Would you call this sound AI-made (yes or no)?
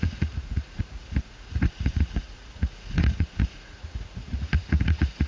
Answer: yes